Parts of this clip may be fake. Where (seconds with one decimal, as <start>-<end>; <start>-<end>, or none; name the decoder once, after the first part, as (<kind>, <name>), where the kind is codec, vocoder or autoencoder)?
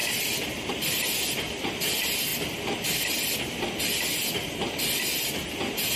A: none